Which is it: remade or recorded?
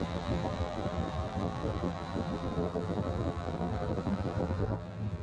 remade